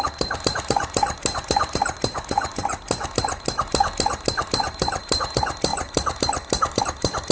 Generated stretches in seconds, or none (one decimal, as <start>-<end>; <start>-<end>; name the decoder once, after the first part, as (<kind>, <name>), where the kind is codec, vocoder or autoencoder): 5.7-6.8 (vocoder, BigVGAN v2)